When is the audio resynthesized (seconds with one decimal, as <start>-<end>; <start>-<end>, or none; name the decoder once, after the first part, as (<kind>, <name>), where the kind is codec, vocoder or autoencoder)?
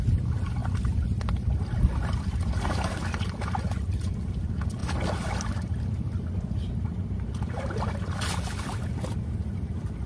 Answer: none